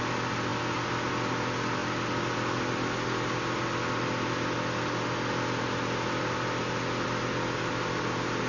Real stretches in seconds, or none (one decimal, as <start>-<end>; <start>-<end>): 0.0-8.5